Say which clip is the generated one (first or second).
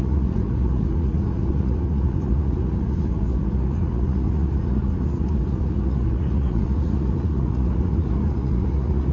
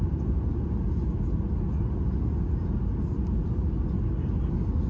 first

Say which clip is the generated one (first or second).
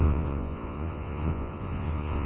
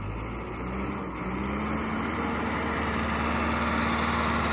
first